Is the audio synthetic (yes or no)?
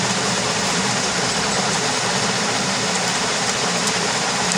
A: yes